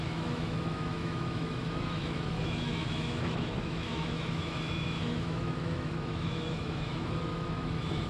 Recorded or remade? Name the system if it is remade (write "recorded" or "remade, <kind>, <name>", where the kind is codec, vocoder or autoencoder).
remade, autoencoder, DAC-VAE